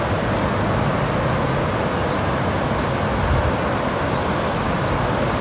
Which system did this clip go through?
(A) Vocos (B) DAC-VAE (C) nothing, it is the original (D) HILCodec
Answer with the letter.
C